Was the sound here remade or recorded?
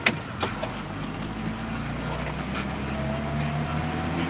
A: recorded